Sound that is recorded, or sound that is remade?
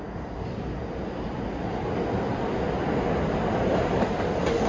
recorded